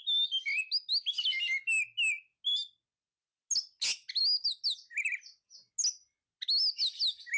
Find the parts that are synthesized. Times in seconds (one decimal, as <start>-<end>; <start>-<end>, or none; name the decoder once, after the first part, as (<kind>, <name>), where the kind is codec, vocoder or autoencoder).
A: none